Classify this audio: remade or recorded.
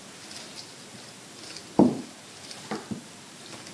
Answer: recorded